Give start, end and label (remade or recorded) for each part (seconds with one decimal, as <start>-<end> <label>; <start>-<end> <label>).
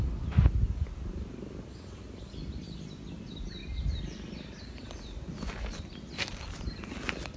0.0-7.4 recorded